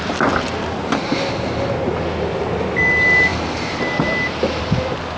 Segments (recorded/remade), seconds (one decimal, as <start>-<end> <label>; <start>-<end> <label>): 0.0-5.2 recorded